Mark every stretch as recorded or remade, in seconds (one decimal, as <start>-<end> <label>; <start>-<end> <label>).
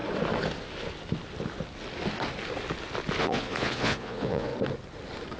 0.0-3.2 recorded; 3.2-4.5 remade; 4.5-5.4 recorded